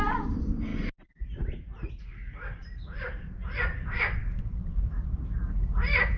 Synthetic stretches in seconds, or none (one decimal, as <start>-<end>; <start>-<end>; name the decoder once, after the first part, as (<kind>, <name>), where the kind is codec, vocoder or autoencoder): none

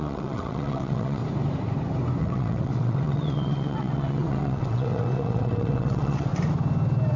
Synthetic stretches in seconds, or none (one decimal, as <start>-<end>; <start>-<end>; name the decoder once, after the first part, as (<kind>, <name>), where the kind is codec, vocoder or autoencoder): 0.0-1.2 (vocoder, WaveNeXt); 2.2-6.3